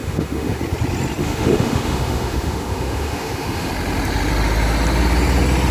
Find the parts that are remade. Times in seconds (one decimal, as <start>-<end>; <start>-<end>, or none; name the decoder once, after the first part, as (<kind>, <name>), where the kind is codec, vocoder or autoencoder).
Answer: 0.0-0.6 (autoencoder, DAC-VAE); 1.2-3.7